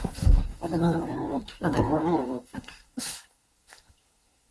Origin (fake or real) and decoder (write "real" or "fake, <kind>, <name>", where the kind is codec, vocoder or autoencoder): fake, codec, SNAC